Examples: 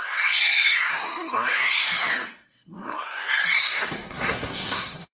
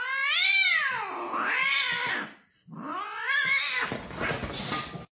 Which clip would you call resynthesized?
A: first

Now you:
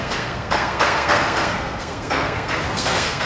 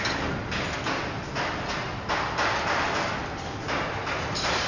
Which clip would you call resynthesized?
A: first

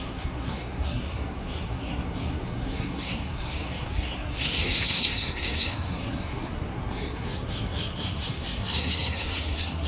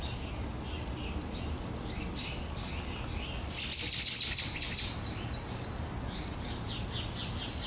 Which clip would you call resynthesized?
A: first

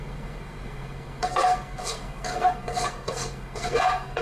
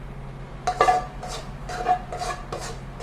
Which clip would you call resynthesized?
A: first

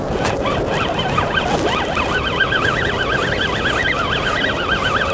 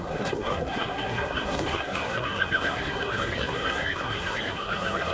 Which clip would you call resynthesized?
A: second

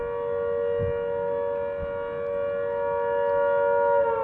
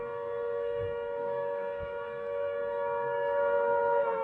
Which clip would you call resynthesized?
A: second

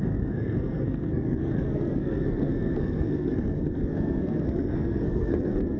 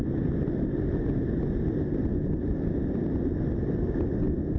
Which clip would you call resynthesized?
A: first